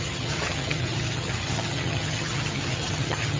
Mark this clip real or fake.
fake